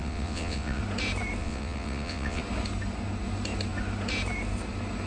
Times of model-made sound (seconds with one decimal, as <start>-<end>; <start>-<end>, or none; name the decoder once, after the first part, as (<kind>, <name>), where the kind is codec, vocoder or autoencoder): 0.0-0.8 (vocoder, WaveNeXt); 1.4-2.4